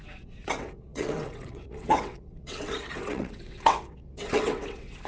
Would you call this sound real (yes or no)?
no